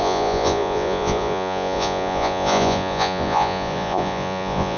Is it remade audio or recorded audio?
remade